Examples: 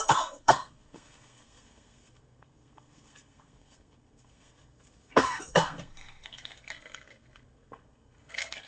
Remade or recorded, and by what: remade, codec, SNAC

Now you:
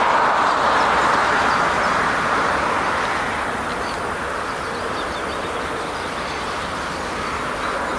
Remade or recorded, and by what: recorded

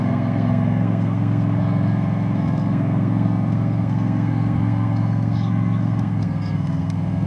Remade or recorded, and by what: remade, codec, SNAC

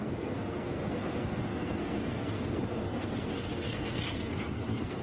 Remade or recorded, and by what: remade, codec, SNAC